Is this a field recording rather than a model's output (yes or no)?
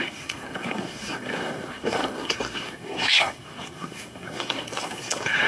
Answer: no